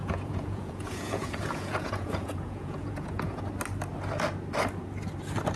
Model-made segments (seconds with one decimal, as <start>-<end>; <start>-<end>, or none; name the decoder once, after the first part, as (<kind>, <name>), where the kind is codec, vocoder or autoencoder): 0.0-3.4 (vocoder, Vocos)